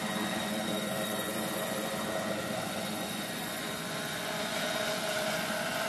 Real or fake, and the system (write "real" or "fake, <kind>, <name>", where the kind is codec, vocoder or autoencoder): fake, vocoder, Vocos